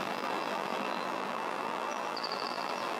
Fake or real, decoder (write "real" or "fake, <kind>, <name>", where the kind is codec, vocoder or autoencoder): fake, vocoder, BigVGAN v2